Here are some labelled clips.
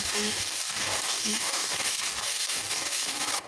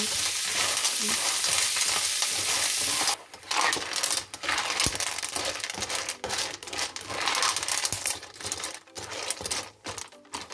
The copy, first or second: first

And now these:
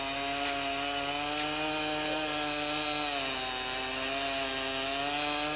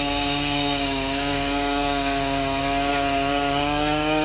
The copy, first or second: second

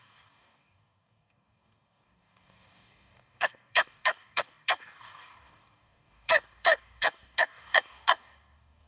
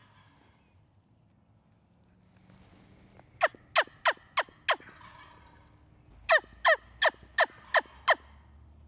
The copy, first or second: first